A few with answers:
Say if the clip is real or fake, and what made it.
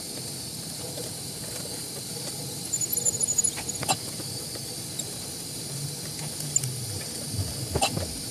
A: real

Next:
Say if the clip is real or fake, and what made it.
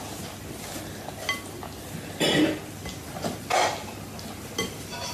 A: real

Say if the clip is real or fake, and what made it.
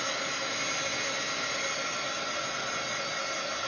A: real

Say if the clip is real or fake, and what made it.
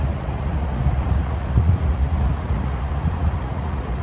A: fake, vocoder, Vocos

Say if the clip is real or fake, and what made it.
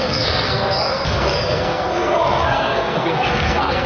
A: fake, codec, SNAC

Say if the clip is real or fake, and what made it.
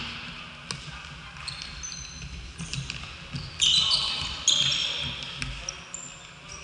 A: real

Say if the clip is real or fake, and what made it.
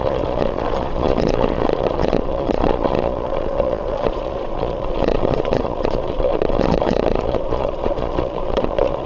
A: fake, vocoder, Vocos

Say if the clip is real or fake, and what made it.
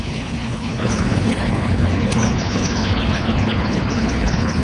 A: fake, codec, HILCodec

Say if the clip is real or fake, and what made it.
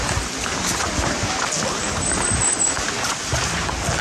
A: real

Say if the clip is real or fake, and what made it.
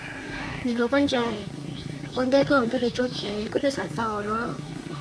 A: fake, codec, SNAC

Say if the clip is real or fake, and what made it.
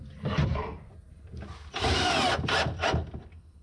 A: real